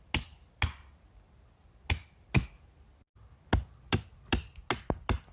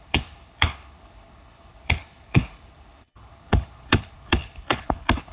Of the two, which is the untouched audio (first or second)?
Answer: first